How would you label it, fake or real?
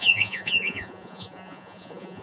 fake